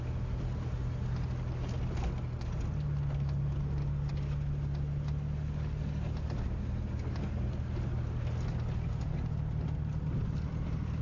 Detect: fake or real real